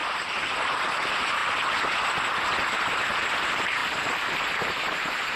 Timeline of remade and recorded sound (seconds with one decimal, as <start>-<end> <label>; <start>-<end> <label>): 0.0-0.9 recorded; 0.9-1.4 remade; 1.4-3.4 recorded; 3.4-3.8 remade; 3.8-4.3 recorded; 4.3-5.4 remade